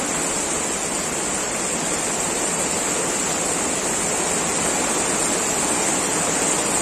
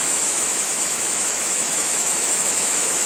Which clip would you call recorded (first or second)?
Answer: first